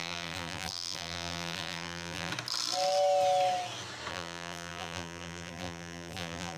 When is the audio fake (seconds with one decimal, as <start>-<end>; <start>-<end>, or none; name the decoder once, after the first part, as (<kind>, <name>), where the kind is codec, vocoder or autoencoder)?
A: 0.0-2.3 (vocoder, BigVGAN v2); 4.1-6.6